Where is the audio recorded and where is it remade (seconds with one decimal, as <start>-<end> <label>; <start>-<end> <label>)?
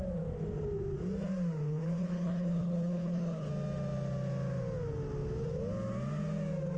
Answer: 0.0-1.6 recorded; 1.6-3.5 remade; 3.5-6.8 recorded